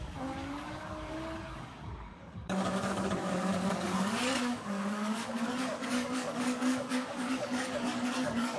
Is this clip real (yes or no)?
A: no